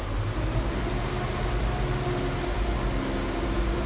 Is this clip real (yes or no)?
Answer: yes